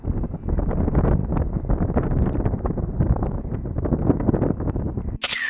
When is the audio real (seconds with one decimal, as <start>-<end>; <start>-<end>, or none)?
0.0-5.5